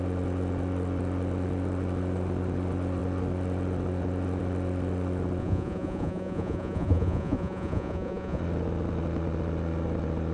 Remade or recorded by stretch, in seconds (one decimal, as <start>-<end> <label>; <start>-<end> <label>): 0.0-5.4 recorded; 5.4-8.4 remade; 8.4-10.3 recorded